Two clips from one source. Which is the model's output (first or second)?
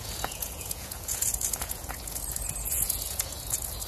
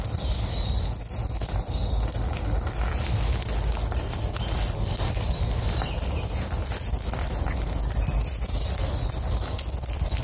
first